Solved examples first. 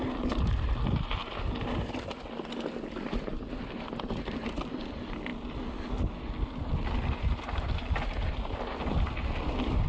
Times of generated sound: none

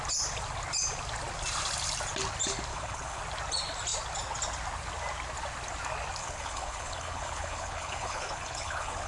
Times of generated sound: 2.7-3.2 (codec, HILCodec); 6.2-9.1

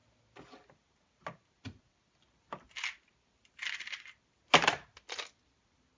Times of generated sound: none

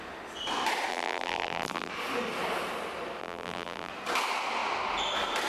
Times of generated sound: 0.9-1.9 (vocoder, BigVGAN v2); 3.2-3.9

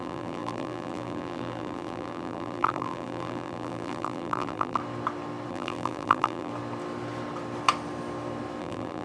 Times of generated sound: 0.0-4.8 (vocoder, BigVGAN v2); 5.5-6.5; 8.6-9.0

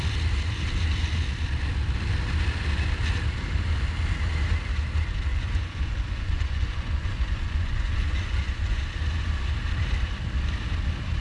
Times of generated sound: 5.3-8.8 (vocoder, Vocos)